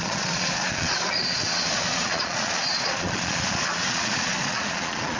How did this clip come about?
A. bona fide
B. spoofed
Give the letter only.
B